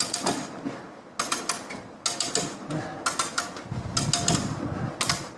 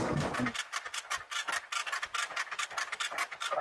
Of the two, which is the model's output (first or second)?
second